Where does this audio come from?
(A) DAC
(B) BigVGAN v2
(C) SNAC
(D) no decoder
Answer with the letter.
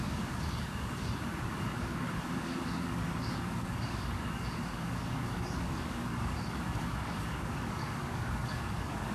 A